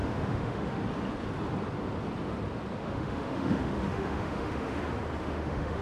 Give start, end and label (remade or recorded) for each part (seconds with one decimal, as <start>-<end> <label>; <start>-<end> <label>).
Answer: 0.0-0.8 remade; 0.8-2.8 recorded; 2.8-4.8 remade; 4.8-5.2 recorded; 5.2-5.8 remade